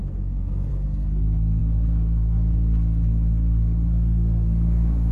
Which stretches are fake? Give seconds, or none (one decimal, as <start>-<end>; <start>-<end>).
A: 0.0-5.1